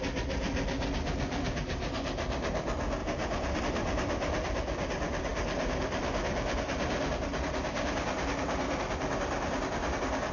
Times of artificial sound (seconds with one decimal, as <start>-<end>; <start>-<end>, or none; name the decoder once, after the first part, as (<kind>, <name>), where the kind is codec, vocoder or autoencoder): none